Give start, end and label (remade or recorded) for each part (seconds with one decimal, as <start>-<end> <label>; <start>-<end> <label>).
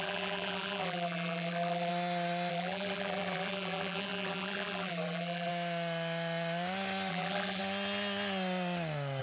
0.0-1.9 remade; 1.9-2.5 recorded; 2.5-5.5 remade; 5.5-7.1 recorded; 7.1-7.6 remade; 7.6-9.2 recorded